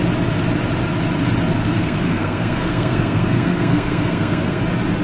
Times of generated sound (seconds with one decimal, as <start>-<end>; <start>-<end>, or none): 1.6-4.6